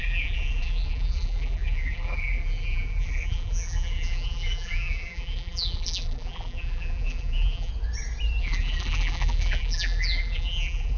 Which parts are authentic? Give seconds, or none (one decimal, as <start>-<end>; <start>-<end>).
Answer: 7.7-8.4